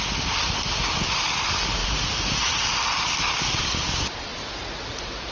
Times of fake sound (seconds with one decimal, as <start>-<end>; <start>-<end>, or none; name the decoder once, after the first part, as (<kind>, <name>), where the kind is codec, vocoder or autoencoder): 1.8-2.6 (vocoder, Vocos); 4.4-5.3